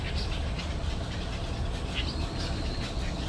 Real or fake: real